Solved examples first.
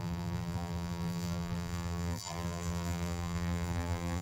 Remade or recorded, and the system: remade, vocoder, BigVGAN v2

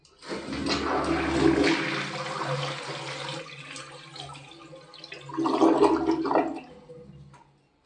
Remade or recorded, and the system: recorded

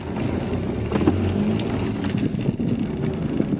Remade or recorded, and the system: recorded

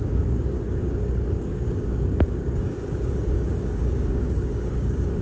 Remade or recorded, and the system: remade, codec, DAC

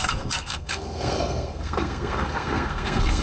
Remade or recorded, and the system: remade, codec, SNAC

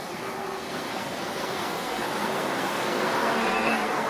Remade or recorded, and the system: remade, codec, SNAC